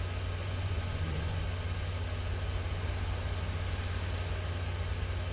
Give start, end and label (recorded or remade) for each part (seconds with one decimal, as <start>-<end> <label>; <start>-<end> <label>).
0.0-0.4 recorded; 0.4-1.4 remade; 1.4-5.3 recorded